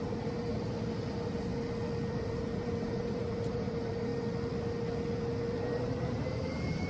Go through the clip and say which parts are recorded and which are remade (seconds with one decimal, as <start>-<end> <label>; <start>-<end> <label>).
0.0-0.5 remade; 0.5-1.1 recorded; 1.1-1.5 remade; 1.5-2.1 recorded; 2.1-4.1 remade; 4.1-5.5 recorded; 5.5-6.9 remade